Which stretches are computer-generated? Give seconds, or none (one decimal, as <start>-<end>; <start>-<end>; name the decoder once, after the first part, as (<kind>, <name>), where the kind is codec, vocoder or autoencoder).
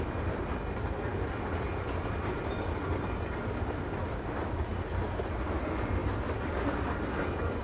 none